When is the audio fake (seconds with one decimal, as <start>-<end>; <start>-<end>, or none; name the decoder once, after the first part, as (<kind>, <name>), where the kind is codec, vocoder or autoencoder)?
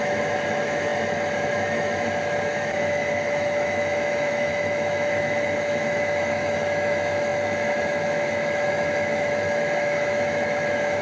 0.0-11.0 (autoencoder, DAC-VAE)